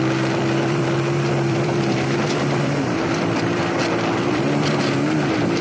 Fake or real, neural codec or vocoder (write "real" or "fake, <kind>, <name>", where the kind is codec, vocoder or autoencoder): fake, vocoder, BigVGAN v2